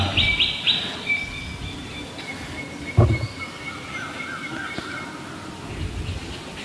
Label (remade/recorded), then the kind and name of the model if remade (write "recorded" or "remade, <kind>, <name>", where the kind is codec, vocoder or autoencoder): recorded